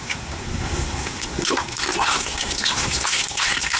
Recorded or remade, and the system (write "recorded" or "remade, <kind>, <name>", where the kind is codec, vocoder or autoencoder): remade, codec, SNAC